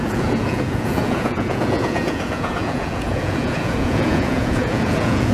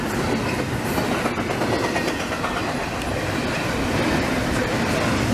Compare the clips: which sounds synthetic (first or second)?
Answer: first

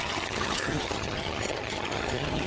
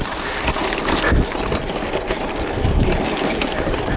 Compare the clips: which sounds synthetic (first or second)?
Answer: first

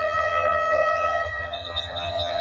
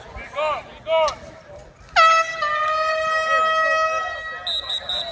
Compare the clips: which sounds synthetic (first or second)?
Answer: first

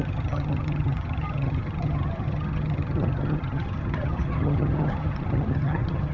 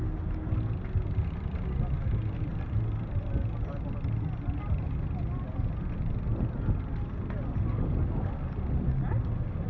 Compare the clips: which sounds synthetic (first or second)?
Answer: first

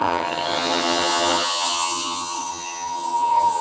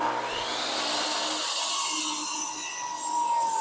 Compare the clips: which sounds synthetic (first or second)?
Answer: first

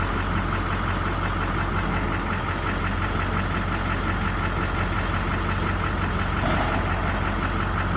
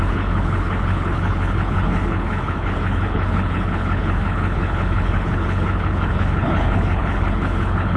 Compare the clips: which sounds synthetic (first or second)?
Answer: second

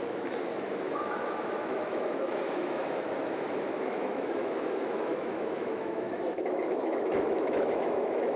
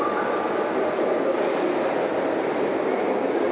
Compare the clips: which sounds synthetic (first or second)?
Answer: first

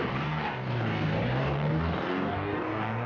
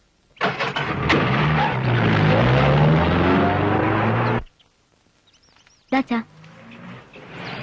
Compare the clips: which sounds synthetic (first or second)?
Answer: first